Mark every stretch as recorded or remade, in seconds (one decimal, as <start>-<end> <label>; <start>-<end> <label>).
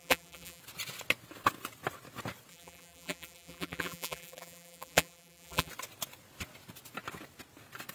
0.0-0.6 remade; 0.6-2.5 recorded; 2.5-5.7 remade; 5.7-7.9 recorded